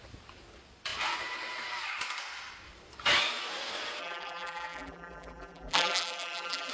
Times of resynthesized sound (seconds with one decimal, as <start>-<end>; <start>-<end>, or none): 4.0-6.7